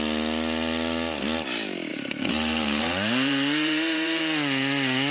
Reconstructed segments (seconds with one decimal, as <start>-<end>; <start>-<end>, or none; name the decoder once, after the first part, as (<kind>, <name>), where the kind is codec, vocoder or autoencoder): 1.9-4.2 (vocoder, BigVGAN v2)